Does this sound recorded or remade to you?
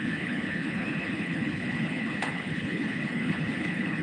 remade